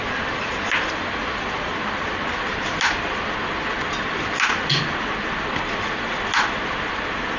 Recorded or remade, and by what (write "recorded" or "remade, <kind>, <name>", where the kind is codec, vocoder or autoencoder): recorded